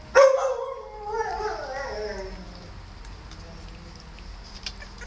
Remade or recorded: recorded